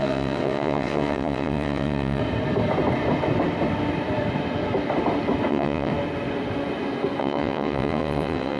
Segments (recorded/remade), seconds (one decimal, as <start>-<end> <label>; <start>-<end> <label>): 0.0-2.2 remade; 2.2-5.5 recorded; 5.5-5.9 remade; 5.9-7.2 recorded; 7.2-8.6 remade